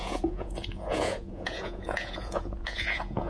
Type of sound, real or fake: fake